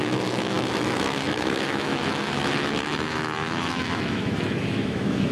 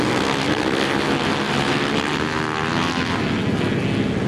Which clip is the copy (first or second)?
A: first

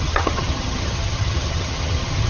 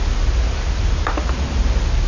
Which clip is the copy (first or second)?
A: first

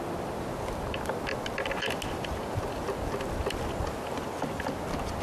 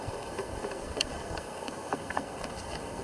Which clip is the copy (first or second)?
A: second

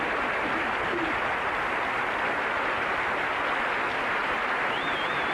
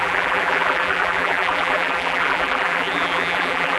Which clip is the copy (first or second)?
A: second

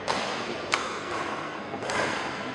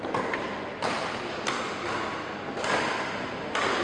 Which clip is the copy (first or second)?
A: first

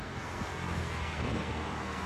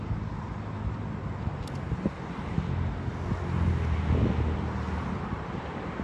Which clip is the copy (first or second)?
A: first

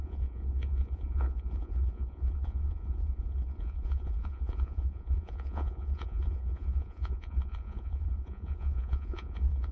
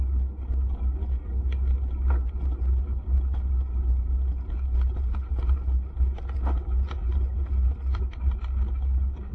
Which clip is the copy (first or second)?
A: first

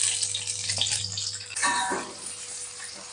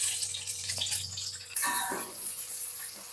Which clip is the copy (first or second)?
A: second